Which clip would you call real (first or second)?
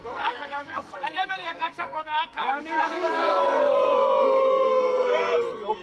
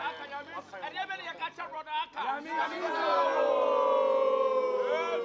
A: second